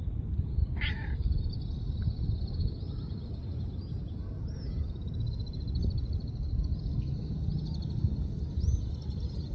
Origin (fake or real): real